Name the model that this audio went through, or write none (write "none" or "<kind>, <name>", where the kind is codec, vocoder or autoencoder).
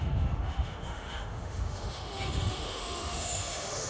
autoencoder, DAC-VAE